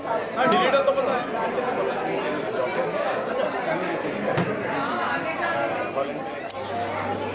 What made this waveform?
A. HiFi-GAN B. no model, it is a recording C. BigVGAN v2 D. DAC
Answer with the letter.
B